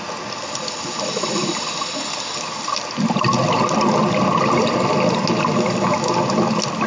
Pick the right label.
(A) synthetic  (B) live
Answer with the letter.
B